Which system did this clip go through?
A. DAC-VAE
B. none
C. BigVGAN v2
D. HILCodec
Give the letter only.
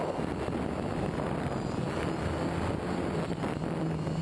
B